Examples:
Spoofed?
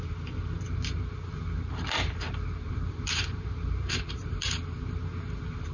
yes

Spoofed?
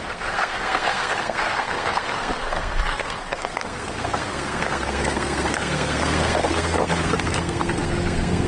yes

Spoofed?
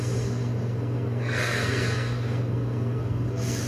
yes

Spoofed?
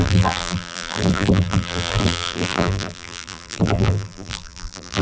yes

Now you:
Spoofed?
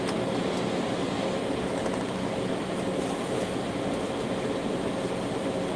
no